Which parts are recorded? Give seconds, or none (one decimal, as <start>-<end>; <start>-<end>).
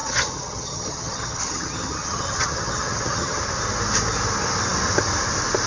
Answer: 3.4-5.7